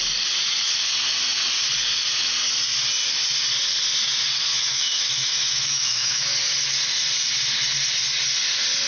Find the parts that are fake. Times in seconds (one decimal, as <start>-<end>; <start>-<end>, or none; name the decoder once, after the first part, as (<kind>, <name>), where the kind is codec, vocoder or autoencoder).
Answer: 4.5-6.2 (autoencoder, DAC-VAE)